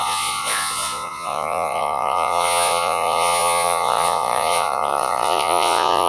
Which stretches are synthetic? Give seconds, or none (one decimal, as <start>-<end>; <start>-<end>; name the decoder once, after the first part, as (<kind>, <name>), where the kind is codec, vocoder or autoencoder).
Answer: 0.0-6.1 (vocoder, Vocos)